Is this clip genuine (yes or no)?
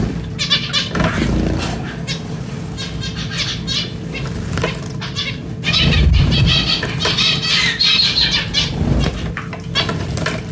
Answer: yes